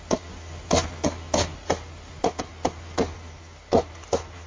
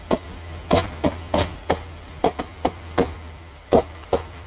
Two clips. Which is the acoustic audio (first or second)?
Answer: first